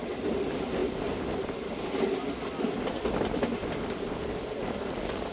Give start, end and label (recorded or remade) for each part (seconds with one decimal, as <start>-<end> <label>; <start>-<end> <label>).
0.0-5.3 recorded